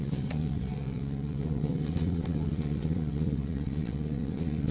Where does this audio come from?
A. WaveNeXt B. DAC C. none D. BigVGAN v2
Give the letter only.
A